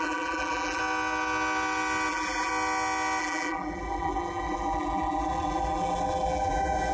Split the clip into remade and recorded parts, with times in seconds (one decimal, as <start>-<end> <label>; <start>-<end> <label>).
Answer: 0.0-0.8 remade; 0.8-2.1 recorded; 2.1-2.5 remade; 2.5-3.2 recorded; 3.2-6.9 remade

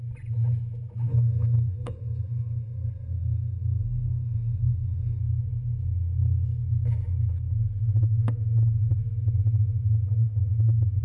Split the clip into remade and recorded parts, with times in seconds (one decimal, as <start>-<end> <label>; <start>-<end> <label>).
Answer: 0.0-1.1 recorded; 1.1-5.2 remade; 5.2-11.0 recorded